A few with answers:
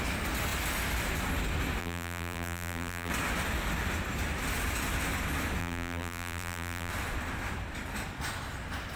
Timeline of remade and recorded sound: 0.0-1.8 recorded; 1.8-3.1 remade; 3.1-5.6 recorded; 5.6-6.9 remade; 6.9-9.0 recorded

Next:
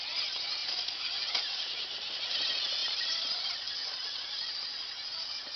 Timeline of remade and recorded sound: 0.0-0.6 recorded; 0.6-2.1 remade; 2.1-2.8 recorded; 2.8-3.3 remade; 3.3-5.6 recorded

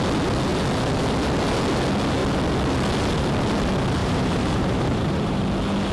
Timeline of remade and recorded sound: 0.0-4.0 recorded; 4.0-5.4 remade; 5.4-5.9 recorded

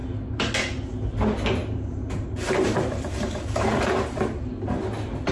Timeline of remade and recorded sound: 0.0-1.6 recorded; 1.6-4.8 remade; 4.8-5.3 recorded